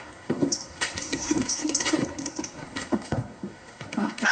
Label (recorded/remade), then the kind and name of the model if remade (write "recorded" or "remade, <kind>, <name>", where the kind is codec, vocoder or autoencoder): remade, codec, SNAC